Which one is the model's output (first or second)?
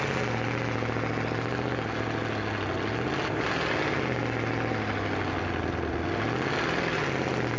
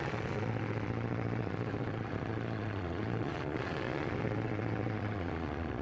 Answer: second